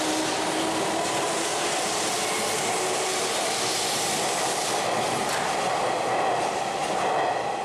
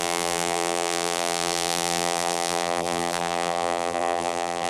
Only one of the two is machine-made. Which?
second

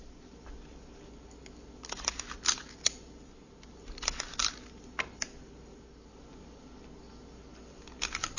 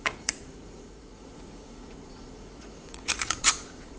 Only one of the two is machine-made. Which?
second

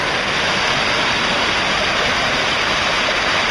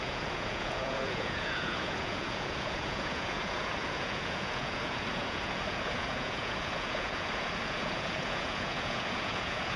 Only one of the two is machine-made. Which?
second